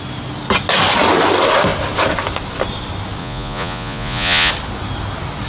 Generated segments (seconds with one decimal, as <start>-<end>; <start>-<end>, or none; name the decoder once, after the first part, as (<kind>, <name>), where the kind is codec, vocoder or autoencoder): 3.2-4.5 (vocoder, Vocos)